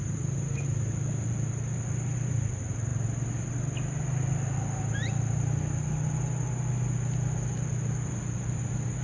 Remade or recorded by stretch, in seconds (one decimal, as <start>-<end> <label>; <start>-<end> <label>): 0.0-9.0 recorded